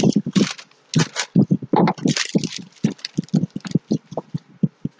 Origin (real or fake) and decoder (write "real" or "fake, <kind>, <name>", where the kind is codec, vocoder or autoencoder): real